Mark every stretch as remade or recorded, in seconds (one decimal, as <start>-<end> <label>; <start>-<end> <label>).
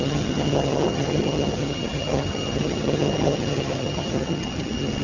0.0-5.0 remade